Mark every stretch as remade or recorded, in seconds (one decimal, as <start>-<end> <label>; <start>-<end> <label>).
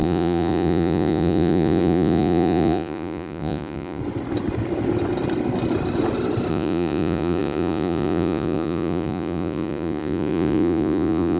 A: 0.0-4.0 remade; 4.0-6.5 recorded; 6.5-11.4 remade